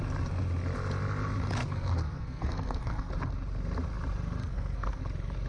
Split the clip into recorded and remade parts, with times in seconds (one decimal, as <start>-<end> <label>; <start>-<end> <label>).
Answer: 0.0-1.6 recorded; 1.6-3.1 remade; 3.1-4.4 recorded; 4.4-5.0 remade; 5.0-5.5 recorded